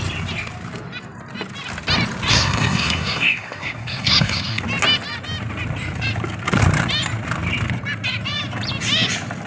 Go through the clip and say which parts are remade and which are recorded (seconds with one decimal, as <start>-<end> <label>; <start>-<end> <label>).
0.0-2.3 recorded; 2.3-4.6 remade; 4.6-9.5 recorded